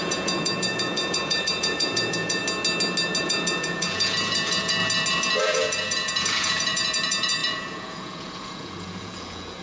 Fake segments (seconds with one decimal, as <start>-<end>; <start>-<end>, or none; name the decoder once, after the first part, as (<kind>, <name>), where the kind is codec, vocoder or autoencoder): 0.0-2.4 (vocoder, Vocos); 3.2-4.8; 5.4-9.6